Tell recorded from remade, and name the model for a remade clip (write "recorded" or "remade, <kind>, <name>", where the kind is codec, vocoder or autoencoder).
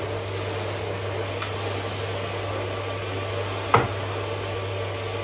recorded